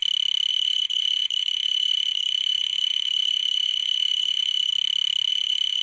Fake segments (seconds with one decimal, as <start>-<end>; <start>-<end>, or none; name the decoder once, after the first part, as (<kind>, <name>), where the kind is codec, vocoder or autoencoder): 0.5-4.7 (vocoder, Vocos); 5.3-5.8